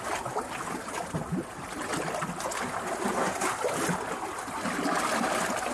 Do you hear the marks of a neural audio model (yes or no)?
no